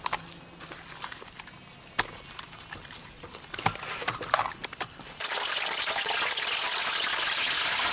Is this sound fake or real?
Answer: real